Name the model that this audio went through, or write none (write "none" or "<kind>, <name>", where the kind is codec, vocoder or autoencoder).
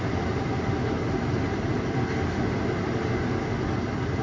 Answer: none